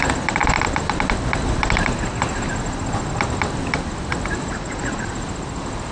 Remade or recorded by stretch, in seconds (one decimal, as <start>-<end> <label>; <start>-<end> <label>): 0.0-4.5 recorded; 4.5-5.1 remade; 5.1-5.9 recorded